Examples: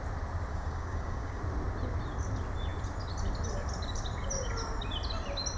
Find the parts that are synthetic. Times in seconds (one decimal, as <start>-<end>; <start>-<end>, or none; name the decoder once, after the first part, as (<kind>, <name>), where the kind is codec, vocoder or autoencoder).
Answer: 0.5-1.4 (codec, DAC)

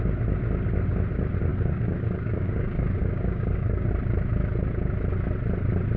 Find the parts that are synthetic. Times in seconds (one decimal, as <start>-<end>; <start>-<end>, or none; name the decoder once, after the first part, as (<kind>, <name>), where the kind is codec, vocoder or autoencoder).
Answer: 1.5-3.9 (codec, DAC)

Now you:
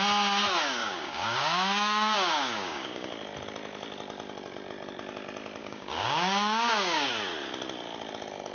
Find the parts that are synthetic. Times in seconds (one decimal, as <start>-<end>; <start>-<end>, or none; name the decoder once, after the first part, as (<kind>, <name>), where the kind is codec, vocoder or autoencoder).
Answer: 0.8-3.1 (codec, DAC); 5.6-7.1